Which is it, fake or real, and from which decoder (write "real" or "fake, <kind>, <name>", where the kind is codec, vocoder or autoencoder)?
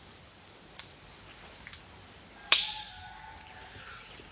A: real